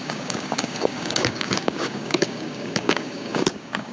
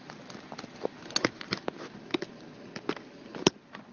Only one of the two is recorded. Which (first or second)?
second